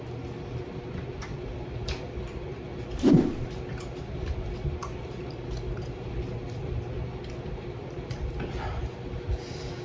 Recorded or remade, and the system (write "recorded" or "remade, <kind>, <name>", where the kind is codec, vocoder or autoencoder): recorded